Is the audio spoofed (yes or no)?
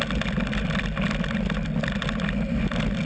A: no